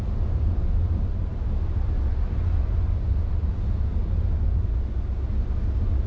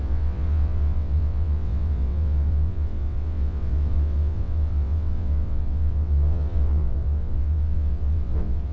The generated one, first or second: second